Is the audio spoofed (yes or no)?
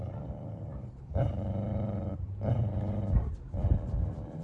yes